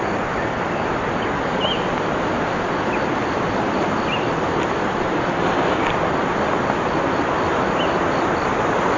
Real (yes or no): yes